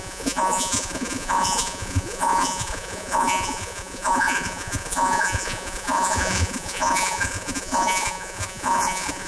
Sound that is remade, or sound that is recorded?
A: remade